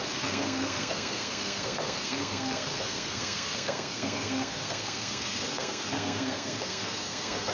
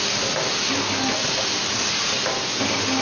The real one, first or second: second